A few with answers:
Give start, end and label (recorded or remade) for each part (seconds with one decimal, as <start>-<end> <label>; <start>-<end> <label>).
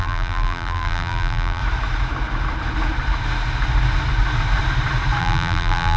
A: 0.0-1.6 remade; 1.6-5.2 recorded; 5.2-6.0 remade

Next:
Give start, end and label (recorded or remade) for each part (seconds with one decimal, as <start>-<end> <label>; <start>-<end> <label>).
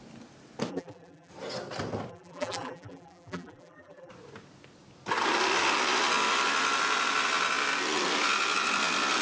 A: 0.0-0.7 recorded; 0.7-1.3 remade; 1.3-2.1 recorded; 2.1-4.1 remade; 4.1-9.2 recorded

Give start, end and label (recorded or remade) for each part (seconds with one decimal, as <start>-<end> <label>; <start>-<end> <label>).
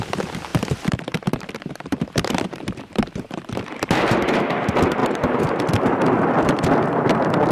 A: 0.0-0.5 recorded; 0.5-4.4 remade; 4.4-5.0 recorded; 5.0-5.7 remade; 5.7-7.5 recorded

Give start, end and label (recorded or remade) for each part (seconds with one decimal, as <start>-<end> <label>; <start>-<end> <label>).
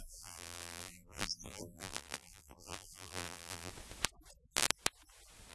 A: 0.0-3.7 remade; 3.7-5.5 recorded